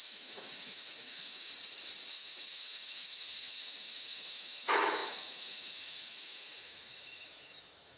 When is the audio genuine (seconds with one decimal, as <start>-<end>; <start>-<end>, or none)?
1.5-2.1